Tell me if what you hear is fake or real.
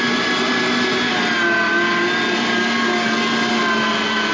real